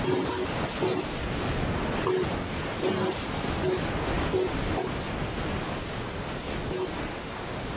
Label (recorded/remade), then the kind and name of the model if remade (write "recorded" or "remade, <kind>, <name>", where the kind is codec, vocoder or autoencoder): recorded